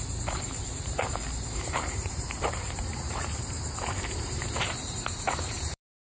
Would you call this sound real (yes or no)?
no